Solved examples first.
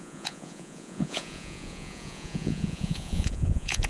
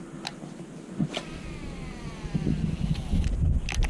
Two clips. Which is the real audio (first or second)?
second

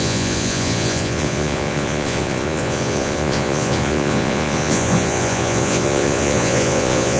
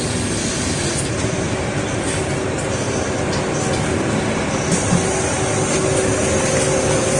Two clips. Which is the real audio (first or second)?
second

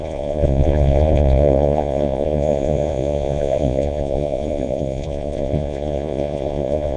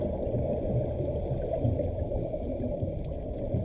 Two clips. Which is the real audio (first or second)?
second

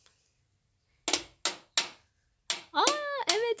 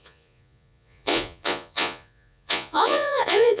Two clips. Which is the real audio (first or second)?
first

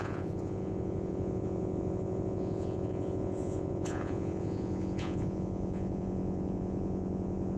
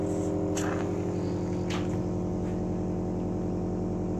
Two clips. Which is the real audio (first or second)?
second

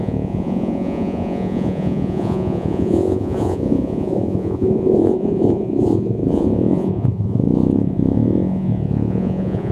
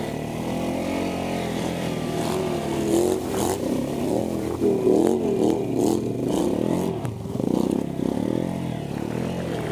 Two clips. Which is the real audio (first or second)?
second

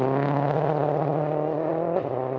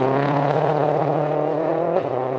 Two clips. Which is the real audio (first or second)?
first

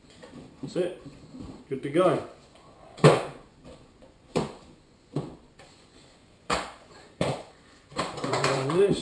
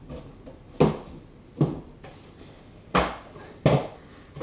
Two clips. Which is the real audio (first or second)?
second